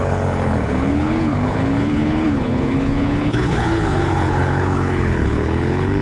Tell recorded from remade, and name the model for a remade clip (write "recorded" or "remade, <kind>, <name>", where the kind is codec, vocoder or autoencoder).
remade, codec, HILCodec